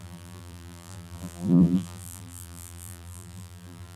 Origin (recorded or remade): remade